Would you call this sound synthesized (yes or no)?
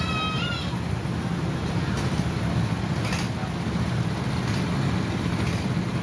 no